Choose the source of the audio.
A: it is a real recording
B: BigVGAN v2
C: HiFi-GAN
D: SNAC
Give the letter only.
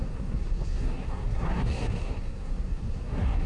D